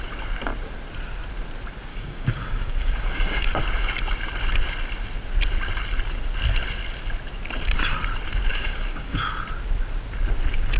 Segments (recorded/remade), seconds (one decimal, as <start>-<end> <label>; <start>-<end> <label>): 0.0-1.9 recorded; 1.9-3.6 remade; 3.6-8.5 recorded; 8.5-9.3 remade; 9.3-10.8 recorded